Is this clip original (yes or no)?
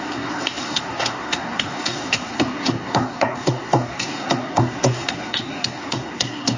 no